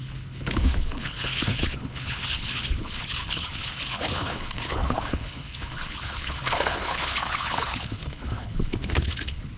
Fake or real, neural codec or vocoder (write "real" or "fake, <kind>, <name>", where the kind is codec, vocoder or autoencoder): fake, codec, HILCodec